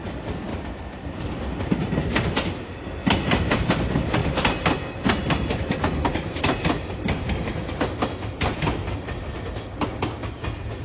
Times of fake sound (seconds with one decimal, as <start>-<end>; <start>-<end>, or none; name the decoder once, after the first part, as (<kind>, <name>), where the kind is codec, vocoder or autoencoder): 0.5-1.4 (vocoder, BigVGAN v2); 3.0-3.6